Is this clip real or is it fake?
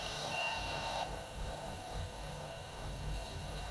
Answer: fake